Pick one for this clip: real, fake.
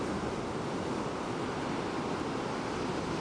real